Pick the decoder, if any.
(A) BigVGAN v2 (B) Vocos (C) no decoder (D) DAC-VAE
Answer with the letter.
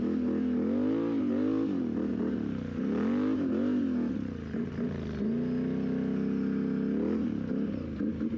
C